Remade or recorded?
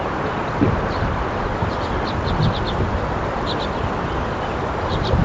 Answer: remade